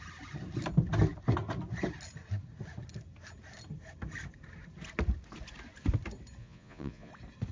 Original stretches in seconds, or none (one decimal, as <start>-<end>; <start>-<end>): 0.0-6.4; 7.1-7.5